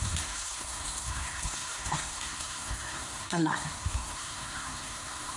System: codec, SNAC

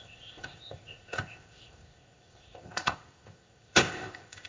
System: codec, ZipCodec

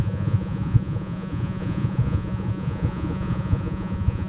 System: vocoder, Vocos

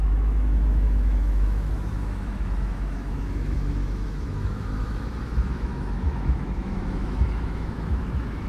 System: autoencoder, DAC-VAE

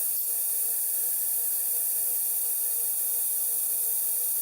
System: vocoder, BigVGAN v2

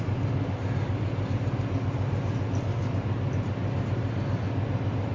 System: none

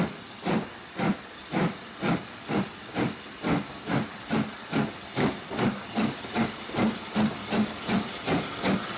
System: none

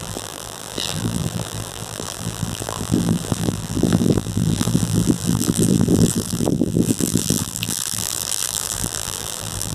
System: vocoder, BigVGAN v2